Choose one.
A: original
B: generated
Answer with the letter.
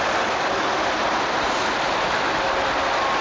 A